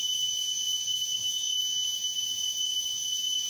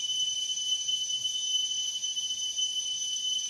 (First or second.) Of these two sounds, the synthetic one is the first